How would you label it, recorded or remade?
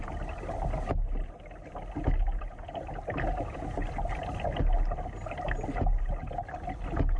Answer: recorded